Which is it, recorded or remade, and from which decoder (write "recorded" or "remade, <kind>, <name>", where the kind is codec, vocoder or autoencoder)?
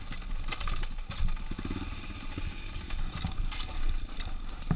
recorded